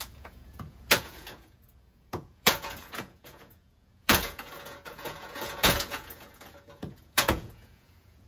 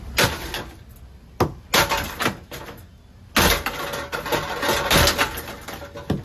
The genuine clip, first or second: second